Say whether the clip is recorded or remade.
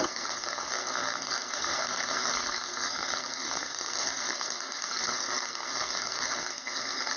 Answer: remade